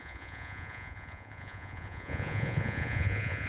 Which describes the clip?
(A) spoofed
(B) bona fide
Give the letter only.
A